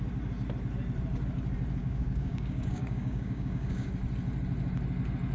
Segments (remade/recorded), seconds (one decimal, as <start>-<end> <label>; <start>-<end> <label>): 0.0-1.8 recorded; 1.8-3.9 remade; 3.9-5.3 recorded